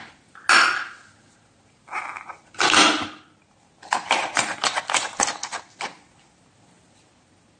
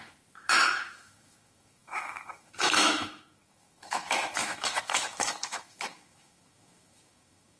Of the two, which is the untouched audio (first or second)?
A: first